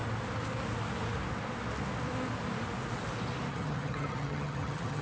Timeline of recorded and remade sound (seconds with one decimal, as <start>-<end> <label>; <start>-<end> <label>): 0.0-3.5 recorded; 3.5-5.0 remade